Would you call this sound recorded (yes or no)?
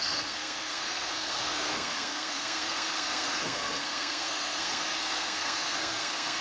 no